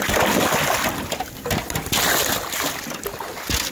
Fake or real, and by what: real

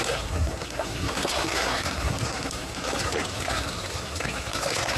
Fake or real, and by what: fake, codec, SNAC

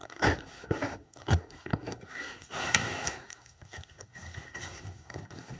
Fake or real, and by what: fake, codec, SNAC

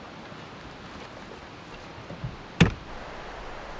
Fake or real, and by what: real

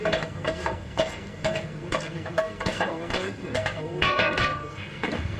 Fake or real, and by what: fake, codec, SNAC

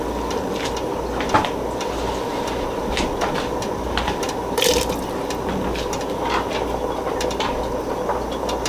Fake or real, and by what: real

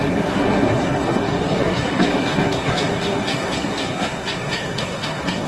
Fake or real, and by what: fake, codec, SNAC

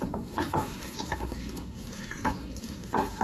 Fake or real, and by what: fake, codec, SNAC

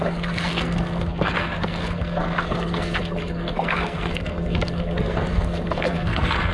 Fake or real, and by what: fake, codec, SNAC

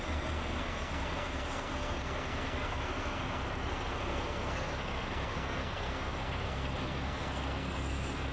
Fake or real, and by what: fake, codec, SNAC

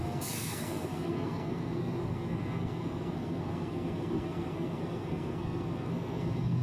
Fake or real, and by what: fake, codec, SNAC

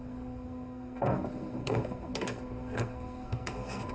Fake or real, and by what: fake, codec, SNAC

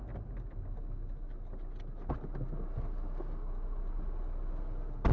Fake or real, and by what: real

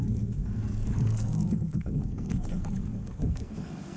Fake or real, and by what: fake, codec, SNAC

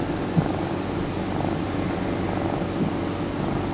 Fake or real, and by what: real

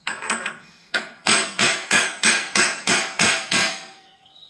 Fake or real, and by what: fake, codec, SNAC